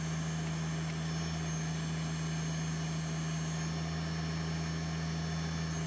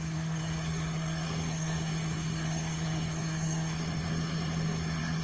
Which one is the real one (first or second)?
first